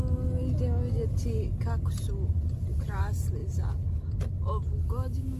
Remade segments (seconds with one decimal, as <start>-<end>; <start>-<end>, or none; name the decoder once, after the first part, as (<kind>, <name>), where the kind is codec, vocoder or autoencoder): none